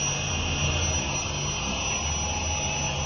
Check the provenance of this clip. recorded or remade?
recorded